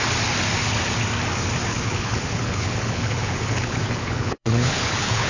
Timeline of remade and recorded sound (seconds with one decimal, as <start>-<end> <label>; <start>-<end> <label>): 0.0-1.7 recorded; 1.7-5.3 remade